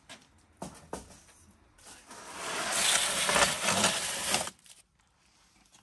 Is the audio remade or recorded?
recorded